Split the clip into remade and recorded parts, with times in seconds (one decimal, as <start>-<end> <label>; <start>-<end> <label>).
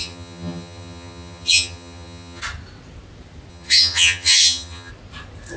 0.0-2.4 remade; 2.4-3.5 recorded; 3.5-4.9 remade; 4.9-5.6 recorded